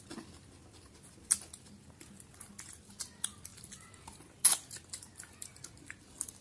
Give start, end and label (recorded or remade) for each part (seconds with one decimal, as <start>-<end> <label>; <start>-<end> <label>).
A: 0.0-6.4 recorded